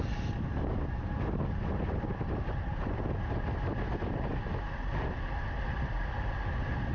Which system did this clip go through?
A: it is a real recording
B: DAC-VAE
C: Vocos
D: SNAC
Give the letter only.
A